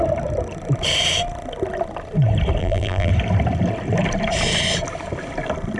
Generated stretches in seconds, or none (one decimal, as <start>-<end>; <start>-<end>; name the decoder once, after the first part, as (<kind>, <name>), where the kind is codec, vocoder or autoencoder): 2.6-3.1 (vocoder, BigVGAN v2)